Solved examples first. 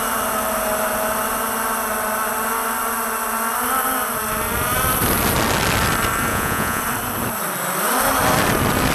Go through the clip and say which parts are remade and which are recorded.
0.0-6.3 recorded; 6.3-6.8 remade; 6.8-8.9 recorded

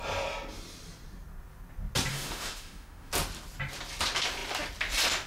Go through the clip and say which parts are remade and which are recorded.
0.0-2.1 recorded; 2.1-3.1 remade; 3.1-5.3 recorded